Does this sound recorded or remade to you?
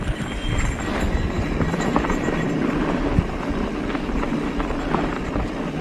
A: recorded